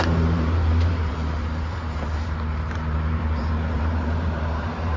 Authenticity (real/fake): fake